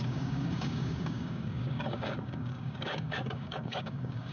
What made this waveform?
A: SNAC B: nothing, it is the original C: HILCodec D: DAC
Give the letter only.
D